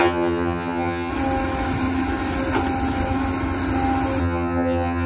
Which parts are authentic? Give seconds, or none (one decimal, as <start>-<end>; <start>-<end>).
1.1-4.2